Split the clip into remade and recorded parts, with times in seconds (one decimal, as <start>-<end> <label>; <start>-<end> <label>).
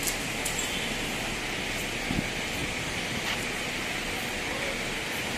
0.0-2.6 recorded; 2.6-3.2 remade; 3.2-5.4 recorded